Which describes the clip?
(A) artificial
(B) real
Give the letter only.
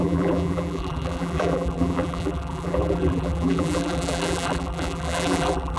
A